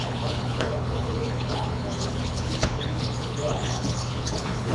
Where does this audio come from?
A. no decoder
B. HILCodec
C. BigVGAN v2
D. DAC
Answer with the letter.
B